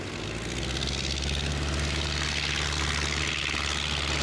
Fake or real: real